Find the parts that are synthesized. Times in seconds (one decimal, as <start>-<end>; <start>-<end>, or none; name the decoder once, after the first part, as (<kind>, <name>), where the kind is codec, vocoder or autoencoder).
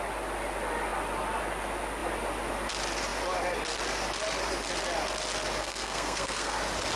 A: 5.6-6.6 (codec, SNAC)